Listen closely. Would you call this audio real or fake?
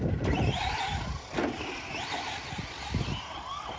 real